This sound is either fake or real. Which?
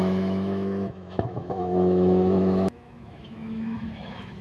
fake